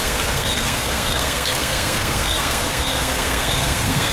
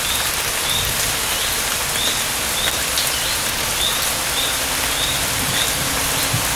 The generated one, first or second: first